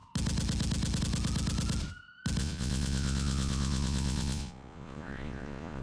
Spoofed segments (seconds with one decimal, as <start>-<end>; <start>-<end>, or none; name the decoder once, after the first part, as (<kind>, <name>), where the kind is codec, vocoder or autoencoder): 2.4-5.8 (vocoder, Vocos)